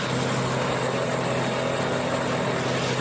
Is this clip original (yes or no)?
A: yes